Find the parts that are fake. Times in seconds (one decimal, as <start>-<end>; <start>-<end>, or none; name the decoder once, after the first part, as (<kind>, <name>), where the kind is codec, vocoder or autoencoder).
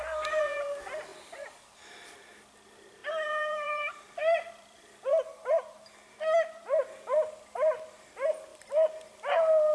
3.0-5.6 (vocoder, BigVGAN v2); 8.5-9.2